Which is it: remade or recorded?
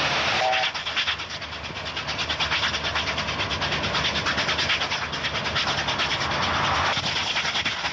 recorded